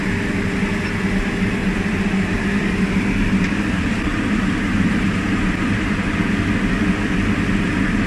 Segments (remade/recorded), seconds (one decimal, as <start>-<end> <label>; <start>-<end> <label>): 0.0-1.6 recorded; 1.6-6.4 remade; 6.4-8.1 recorded